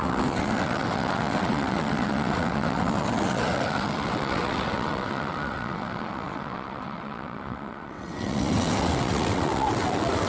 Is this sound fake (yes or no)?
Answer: yes